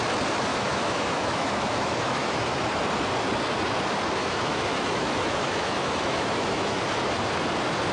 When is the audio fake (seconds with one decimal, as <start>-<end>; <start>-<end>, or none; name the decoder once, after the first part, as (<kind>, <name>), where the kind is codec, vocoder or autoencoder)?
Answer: 0.5-2.4 (autoencoder, DAC-VAE); 4.2-6.8